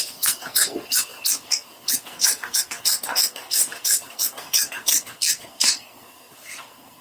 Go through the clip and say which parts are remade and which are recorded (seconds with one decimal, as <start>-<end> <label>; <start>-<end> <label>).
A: 0.0-7.0 remade